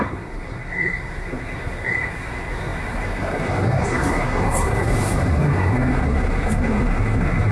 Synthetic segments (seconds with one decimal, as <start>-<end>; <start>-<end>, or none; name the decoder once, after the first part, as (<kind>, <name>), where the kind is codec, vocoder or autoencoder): 0.0-7.5 (codec, SNAC)